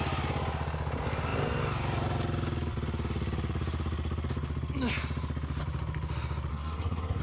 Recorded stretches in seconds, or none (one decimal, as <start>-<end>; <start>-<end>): 0.0-6.5